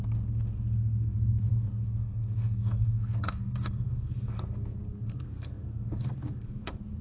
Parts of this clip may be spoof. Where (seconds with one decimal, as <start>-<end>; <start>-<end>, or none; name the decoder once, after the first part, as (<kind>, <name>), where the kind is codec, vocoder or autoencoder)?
0.0-7.0 (codec, SNAC)